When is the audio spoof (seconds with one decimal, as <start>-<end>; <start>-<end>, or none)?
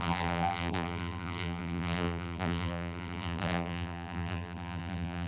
0.0-5.3